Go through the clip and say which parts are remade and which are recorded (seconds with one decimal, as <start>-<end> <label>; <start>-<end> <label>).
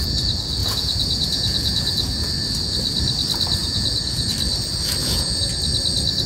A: 0.0-0.6 recorded; 0.6-2.1 remade; 2.1-3.6 recorded; 3.6-4.3 remade; 4.3-5.0 recorded; 5.0-5.5 remade; 5.5-6.3 recorded